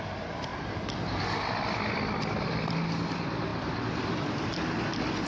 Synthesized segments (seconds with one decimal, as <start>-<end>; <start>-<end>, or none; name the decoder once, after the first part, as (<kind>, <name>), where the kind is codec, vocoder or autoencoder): none